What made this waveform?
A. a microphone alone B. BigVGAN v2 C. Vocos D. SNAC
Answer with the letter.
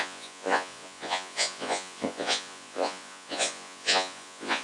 C